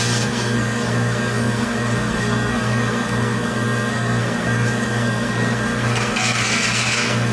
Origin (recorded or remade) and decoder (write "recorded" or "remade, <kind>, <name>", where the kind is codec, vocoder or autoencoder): remade, codec, SNAC